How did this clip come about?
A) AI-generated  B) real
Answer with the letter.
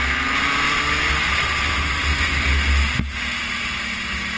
B